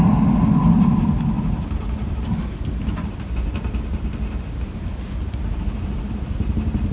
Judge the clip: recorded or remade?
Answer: recorded